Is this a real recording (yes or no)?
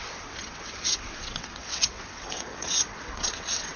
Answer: no